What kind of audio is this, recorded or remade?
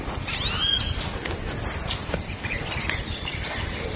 recorded